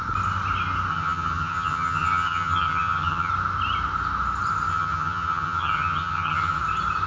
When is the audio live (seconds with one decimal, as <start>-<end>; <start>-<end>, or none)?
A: 0.0-0.9; 3.3-4.7; 6.6-7.1